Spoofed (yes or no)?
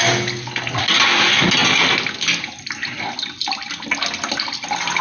no